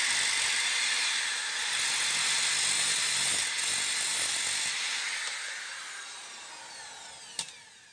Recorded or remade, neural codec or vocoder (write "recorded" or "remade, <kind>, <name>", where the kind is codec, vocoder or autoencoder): recorded